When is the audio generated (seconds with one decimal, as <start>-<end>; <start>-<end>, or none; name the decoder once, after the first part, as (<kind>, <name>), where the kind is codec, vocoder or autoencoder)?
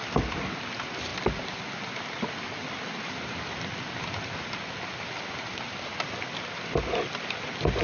none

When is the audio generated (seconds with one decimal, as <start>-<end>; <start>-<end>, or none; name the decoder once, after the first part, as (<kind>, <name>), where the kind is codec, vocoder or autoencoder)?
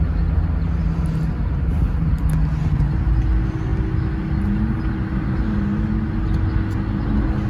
none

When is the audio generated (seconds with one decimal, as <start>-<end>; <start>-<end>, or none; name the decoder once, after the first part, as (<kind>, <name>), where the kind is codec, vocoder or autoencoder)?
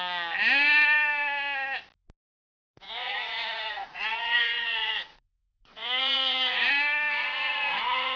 2.4-6.7 (vocoder, Vocos); 7.2-8.2